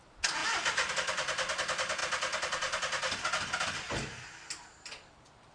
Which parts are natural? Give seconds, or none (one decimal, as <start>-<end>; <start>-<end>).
0.0-5.5

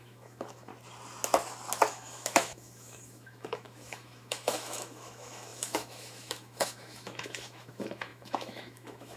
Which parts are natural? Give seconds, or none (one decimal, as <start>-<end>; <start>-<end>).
0.7-1.9

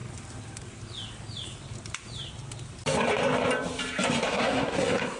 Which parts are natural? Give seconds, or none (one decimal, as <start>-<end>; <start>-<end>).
0.0-4.3

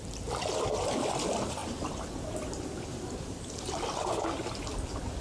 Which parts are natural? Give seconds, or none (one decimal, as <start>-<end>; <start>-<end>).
0.0-5.2